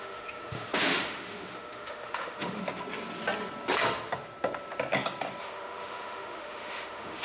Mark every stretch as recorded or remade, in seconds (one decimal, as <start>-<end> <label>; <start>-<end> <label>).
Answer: 0.0-2.6 remade; 2.6-5.4 recorded; 5.4-7.2 remade